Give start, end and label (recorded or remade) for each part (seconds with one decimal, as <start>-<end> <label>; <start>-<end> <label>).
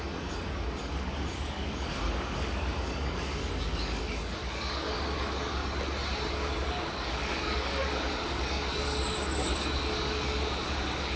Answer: 0.0-5.6 remade; 5.6-6.3 recorded; 6.3-11.2 remade